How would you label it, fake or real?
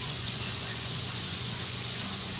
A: fake